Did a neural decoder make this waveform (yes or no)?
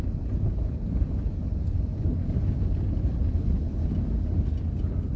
no